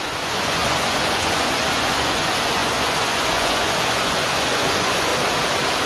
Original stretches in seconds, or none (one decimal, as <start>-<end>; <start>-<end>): 5.1-5.9